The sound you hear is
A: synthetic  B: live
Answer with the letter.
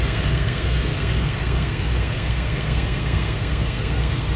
A